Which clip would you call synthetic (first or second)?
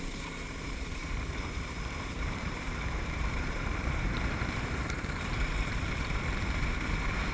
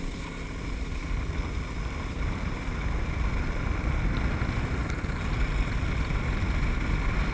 first